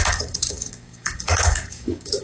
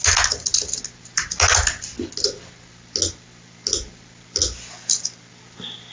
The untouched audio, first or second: second